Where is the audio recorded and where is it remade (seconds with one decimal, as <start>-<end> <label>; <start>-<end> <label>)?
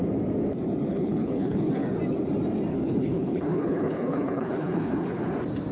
0.0-0.9 recorded; 0.9-1.7 remade; 1.7-2.7 recorded; 2.7-5.2 remade; 5.2-5.7 recorded